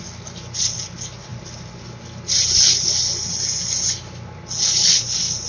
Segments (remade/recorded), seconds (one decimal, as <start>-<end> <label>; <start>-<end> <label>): 0.0-5.5 recorded